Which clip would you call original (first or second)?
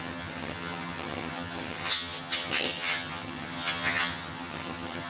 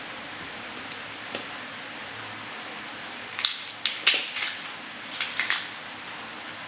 second